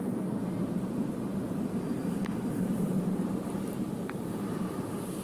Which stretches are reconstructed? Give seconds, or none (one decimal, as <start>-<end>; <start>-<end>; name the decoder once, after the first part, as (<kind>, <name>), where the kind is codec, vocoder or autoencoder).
0.0-5.2 (vocoder, BigVGAN v2)